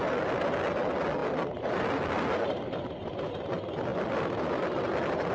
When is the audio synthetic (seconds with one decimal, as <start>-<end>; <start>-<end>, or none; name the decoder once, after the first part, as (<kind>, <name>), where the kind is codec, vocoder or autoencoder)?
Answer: none